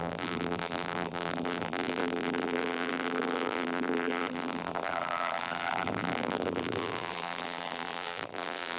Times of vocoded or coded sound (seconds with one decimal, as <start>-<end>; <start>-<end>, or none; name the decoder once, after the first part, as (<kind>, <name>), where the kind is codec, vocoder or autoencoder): 0.0-8.8 (vocoder, BigVGAN v2)